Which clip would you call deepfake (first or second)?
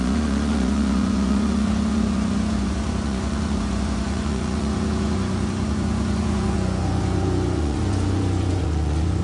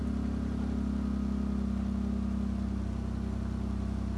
first